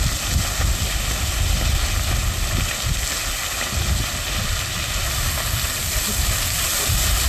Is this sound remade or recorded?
recorded